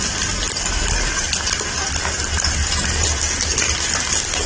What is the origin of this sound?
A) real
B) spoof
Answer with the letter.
A